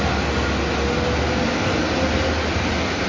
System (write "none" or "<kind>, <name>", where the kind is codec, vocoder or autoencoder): none